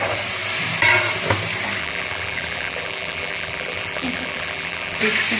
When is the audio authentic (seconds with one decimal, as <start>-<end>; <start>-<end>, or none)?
0.0-1.8; 5.0-5.4